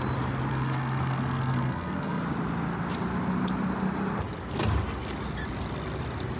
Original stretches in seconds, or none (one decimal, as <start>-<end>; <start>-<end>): 0.0-0.5; 2.2-6.4